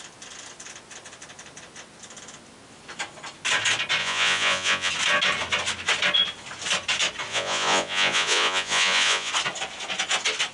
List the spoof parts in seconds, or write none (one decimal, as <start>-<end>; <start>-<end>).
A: 4.0-4.9; 7.3-9.3